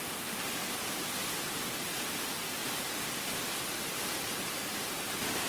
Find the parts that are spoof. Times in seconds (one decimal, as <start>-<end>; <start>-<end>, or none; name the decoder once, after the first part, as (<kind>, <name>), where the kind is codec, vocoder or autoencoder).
0.0-2.6 (vocoder, BigVGAN v2); 3.8-5.5